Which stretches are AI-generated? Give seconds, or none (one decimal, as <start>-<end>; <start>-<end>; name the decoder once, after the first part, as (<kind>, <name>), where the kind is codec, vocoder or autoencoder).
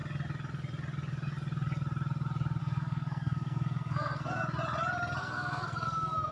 2.6-4.4 (codec, SNAC); 5.2-6.3